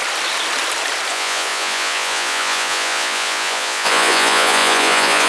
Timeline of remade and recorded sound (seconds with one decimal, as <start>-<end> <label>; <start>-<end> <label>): 0.0-1.1 recorded; 1.1-5.3 remade